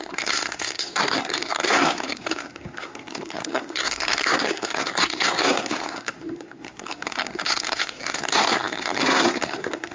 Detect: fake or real fake